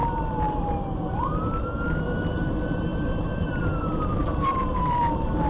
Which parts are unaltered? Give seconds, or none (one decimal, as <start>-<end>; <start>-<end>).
none